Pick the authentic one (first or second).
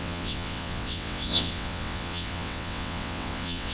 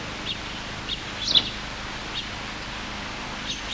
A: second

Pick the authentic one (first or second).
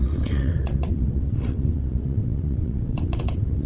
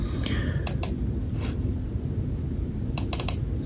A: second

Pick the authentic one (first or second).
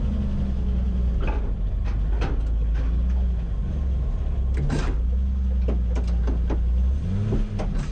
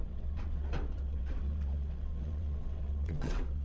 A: first